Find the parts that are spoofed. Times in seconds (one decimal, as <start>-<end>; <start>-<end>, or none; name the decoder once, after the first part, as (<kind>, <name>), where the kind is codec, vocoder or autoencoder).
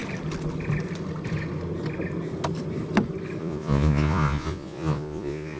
3.4-5.6 (vocoder, Vocos)